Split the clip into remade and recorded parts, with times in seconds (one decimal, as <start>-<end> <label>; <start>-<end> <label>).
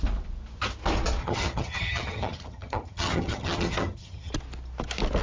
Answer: 0.0-1.2 recorded; 1.2-4.3 remade; 4.3-5.2 recorded